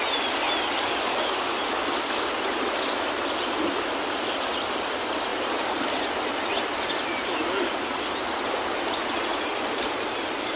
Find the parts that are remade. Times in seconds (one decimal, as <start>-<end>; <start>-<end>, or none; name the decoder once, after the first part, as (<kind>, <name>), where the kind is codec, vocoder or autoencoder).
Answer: 5.3-6.0 (vocoder, BigVGAN v2); 9.3-10.2